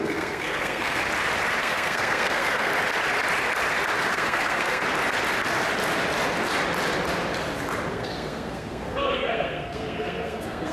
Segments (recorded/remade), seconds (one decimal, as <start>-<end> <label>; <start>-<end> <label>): 0.0-1.0 remade; 1.0-1.6 recorded; 1.6-2.7 remade; 2.7-4.1 recorded; 4.1-4.8 remade; 4.8-7.9 recorded; 7.9-10.7 remade